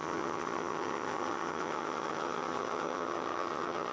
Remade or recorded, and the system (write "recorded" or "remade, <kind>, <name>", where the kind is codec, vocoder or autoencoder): remade, vocoder, HiFi-GAN